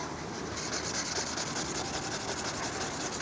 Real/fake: real